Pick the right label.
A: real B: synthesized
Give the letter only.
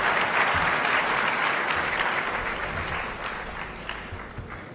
A